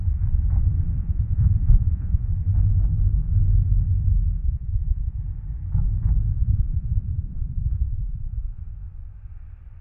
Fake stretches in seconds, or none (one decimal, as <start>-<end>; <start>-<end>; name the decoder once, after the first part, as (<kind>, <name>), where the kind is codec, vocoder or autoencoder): 1.0-2.3 (vocoder, Vocos); 4.4-5.2; 6.3-8.6